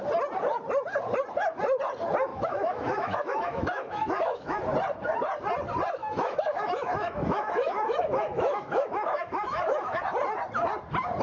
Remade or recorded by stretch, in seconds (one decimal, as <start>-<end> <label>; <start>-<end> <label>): 0.0-2.3 recorded; 2.3-4.6 remade; 4.6-6.0 recorded; 6.0-10.0 remade; 10.0-11.2 recorded